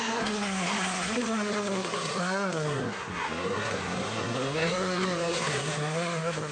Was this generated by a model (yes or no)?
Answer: yes